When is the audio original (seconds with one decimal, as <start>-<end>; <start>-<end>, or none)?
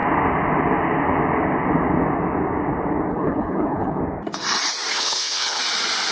0.0-3.1; 4.0-4.9; 5.6-6.1